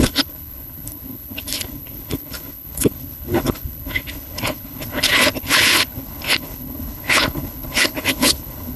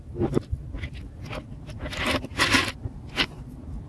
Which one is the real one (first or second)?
second